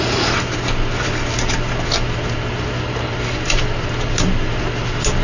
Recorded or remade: recorded